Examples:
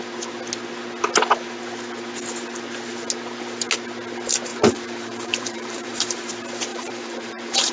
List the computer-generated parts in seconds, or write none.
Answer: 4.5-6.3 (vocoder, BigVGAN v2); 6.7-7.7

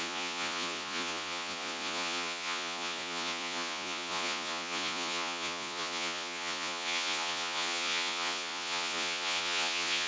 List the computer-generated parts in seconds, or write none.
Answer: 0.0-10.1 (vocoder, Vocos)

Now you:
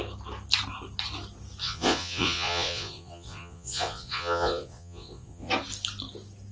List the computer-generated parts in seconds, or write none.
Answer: 1.6-5.5 (vocoder, Vocos)

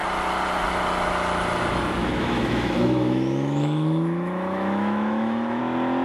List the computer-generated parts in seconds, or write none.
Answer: 2.0-5.6 (autoencoder, DAC-VAE)